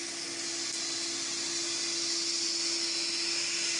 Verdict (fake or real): real